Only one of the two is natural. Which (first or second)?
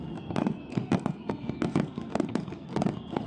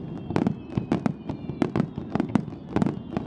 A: second